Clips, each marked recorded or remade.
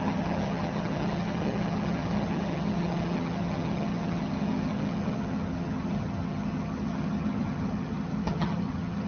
remade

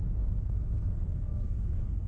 remade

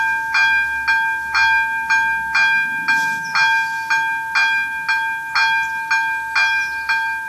recorded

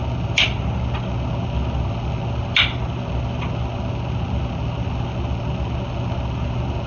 recorded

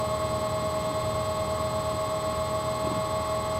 recorded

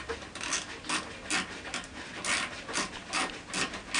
recorded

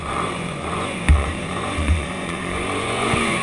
remade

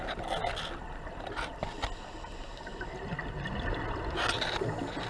recorded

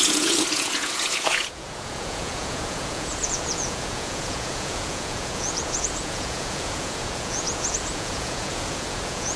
remade